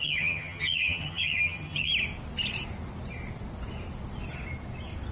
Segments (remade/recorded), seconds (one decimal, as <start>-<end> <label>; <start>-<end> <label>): 0.0-1.9 remade; 1.9-5.1 recorded